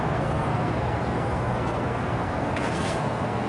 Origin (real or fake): fake